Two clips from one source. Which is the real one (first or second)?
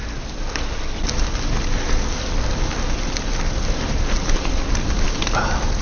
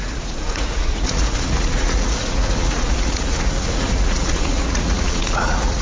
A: first